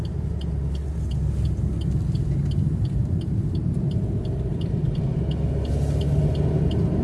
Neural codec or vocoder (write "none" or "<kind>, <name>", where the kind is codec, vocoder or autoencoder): none